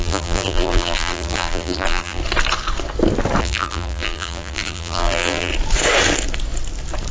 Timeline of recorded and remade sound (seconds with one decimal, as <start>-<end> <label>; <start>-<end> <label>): 0.0-2.2 remade; 2.2-3.4 recorded; 3.4-5.5 remade; 5.5-7.1 recorded